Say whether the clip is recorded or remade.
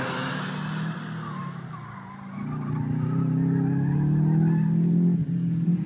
recorded